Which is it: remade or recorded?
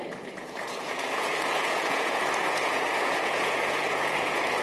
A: remade